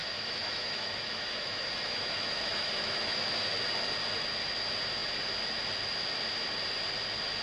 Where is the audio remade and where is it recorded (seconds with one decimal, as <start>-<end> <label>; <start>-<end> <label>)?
0.0-3.5 remade; 3.5-7.4 recorded